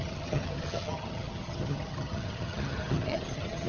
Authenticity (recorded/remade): remade